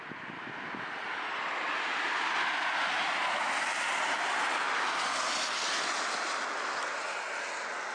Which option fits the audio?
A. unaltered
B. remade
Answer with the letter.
A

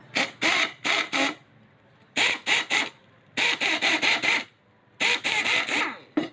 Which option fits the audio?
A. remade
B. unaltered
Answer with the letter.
B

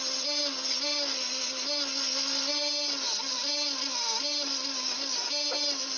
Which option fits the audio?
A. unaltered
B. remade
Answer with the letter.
A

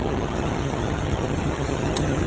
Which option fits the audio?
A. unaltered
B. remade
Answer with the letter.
B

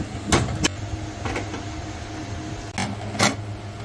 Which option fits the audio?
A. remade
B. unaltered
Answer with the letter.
B